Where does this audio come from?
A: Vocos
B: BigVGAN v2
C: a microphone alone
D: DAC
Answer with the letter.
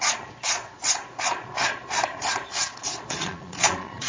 A